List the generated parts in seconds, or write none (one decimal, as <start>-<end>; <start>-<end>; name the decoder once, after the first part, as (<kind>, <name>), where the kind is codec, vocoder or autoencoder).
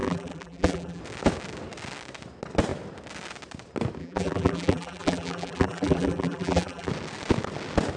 0.0-1.0 (vocoder, BigVGAN v2); 4.0-6.9